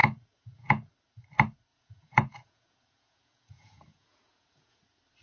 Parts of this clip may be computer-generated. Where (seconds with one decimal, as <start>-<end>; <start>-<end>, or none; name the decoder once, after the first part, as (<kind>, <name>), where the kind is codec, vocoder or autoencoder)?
0.0-0.9 (vocoder, Vocos); 1.7-4.8